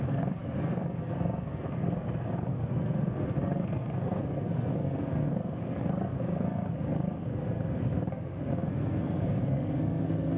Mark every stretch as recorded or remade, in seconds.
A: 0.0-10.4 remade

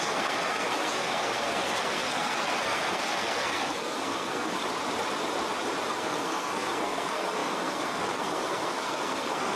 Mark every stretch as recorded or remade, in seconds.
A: 0.0-4.6 remade; 4.6-5.9 recorded; 5.9-9.6 remade

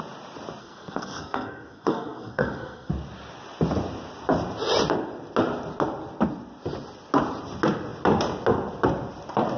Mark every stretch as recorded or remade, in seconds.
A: 0.0-0.6 recorded; 0.6-2.9 remade; 2.9-9.6 recorded

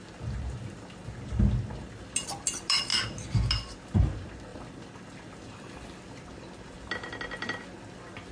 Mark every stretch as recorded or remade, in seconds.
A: 0.0-8.3 recorded

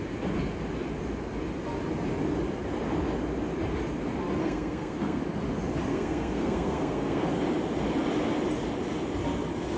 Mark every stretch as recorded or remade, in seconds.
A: 0.0-4.4 recorded; 4.4-5.2 remade; 5.2-5.9 recorded; 5.9-7.3 remade; 7.3-9.8 recorded

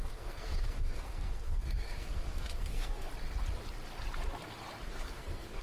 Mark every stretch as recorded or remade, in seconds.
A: 0.0-3.1 remade; 3.1-4.9 recorded; 4.9-5.6 remade